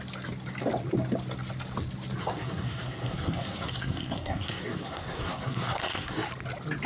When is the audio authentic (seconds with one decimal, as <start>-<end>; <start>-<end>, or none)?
0.0-2.2; 6.3-6.9